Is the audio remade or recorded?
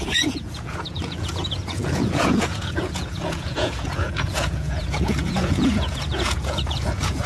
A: remade